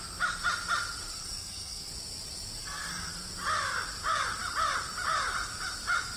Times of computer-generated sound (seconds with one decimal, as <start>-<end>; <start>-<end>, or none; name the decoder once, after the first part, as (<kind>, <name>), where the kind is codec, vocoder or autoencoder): 1.1-1.9 (codec, SNAC); 2.6-3.1